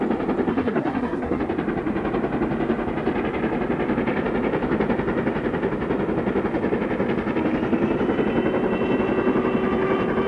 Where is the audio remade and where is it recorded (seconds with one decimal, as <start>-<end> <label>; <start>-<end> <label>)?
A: 0.0-0.5 recorded; 0.5-1.4 remade; 1.4-10.3 recorded